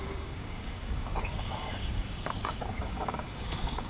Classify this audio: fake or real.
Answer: fake